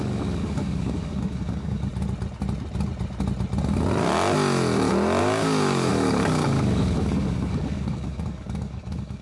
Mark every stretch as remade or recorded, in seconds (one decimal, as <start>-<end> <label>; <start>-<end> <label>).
0.0-1.9 remade; 1.9-5.2 recorded; 5.2-9.2 remade